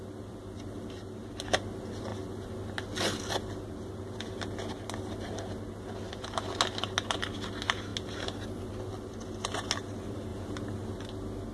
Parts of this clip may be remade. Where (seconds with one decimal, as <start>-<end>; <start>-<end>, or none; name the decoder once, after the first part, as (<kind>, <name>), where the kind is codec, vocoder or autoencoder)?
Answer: none